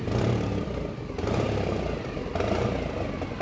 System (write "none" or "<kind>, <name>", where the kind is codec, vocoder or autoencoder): none